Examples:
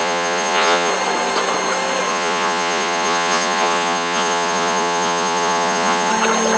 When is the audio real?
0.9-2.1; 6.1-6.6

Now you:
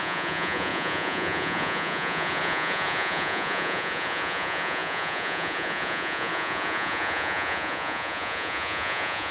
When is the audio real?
none

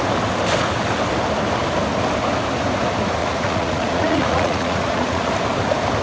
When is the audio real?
0.0-3.2; 5.3-6.0

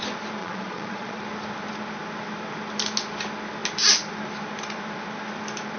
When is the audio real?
0.0-0.4; 1.2-5.8

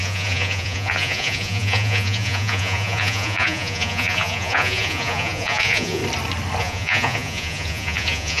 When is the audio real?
6.0-6.6

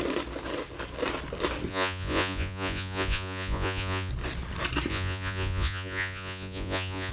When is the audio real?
0.0-1.7; 4.1-4.9

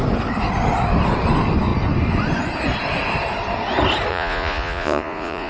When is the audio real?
0.0-4.1

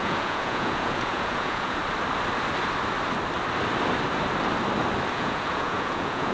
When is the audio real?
1.8-5.1